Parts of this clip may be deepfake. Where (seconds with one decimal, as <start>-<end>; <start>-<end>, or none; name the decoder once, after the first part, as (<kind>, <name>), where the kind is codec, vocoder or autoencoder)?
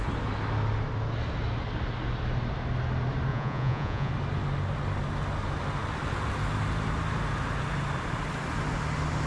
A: 3.3-4.1 (vocoder, Vocos)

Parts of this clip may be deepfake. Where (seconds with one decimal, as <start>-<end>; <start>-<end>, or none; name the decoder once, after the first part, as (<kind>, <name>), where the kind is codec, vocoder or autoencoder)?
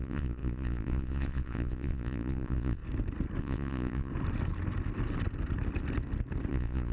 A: 0.0-2.8 (vocoder, Vocos); 3.4-4.1; 6.5-6.9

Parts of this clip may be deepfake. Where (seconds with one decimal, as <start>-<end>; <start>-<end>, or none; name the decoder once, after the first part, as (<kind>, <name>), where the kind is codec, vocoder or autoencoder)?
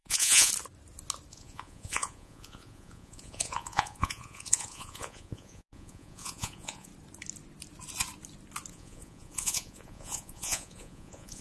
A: 0.0-0.5 (vocoder, Vocos); 1.3-6.9; 8.7-11.4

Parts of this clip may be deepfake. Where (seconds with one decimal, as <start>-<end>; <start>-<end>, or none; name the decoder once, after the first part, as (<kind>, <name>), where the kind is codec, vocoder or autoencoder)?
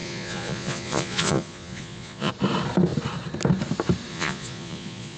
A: 0.0-2.3 (vocoder, Vocos); 4.1-5.2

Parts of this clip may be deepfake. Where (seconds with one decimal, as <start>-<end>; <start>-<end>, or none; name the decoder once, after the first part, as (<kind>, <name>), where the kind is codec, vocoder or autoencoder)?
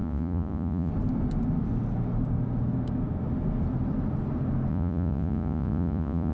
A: 0.0-0.9 (vocoder, Vocos); 4.7-6.3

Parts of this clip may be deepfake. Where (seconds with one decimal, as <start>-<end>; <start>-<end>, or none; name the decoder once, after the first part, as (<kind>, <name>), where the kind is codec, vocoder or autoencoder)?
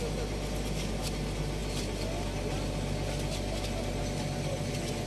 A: none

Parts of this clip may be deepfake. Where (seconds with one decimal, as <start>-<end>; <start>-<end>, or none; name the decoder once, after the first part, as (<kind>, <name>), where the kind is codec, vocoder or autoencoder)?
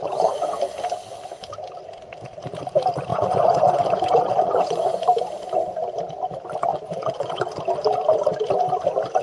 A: 3.1-5.1 (vocoder, Vocos); 6.7-7.4